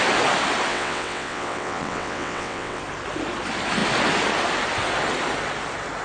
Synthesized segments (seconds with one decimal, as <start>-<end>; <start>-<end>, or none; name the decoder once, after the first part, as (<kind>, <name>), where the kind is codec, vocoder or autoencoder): 0.7-2.8 (vocoder, WaveNeXt)